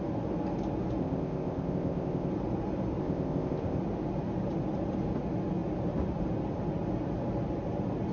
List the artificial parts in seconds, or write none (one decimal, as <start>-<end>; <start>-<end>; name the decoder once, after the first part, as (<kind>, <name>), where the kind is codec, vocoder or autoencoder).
1.0-2.3 (codec, ZipCodec); 3.0-3.8